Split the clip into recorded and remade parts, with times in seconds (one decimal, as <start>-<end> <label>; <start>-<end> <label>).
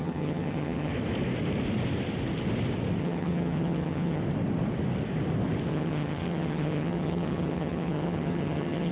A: 0.0-0.9 remade; 0.9-3.0 recorded; 3.0-4.2 remade; 4.2-5.7 recorded; 5.7-8.9 remade